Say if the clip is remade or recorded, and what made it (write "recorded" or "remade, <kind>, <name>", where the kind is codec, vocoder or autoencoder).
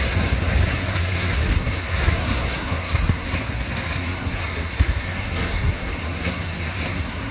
remade, codec, SNAC